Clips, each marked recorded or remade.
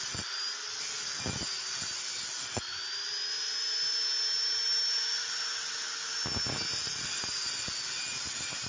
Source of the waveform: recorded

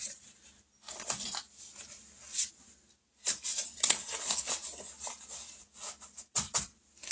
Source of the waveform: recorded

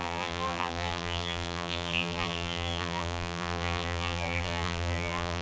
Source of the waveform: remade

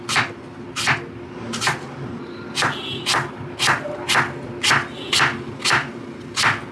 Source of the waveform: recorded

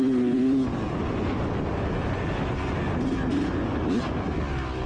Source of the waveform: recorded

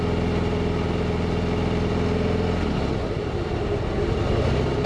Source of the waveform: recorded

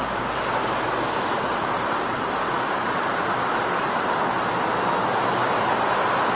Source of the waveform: recorded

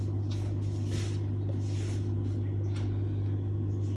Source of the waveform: recorded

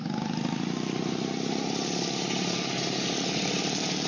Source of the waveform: recorded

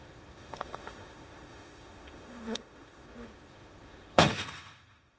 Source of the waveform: remade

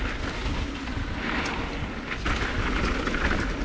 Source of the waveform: recorded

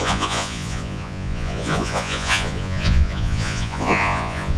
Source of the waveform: remade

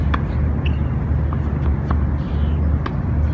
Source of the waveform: recorded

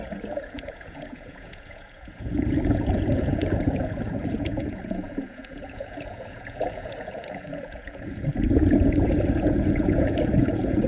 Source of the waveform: remade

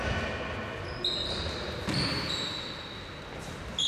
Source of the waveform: recorded